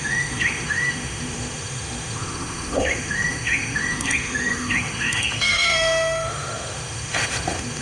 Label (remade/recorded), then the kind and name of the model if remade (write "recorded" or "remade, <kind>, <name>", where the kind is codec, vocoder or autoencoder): remade, autoencoder, DAC-VAE